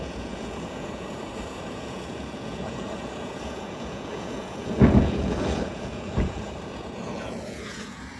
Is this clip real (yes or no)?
no